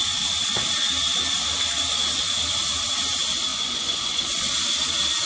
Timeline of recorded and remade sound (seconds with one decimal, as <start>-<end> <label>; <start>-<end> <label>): 0.0-3.5 recorded; 3.5-4.4 remade; 4.4-5.3 recorded